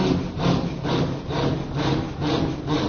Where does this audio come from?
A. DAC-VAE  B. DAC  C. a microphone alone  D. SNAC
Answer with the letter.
C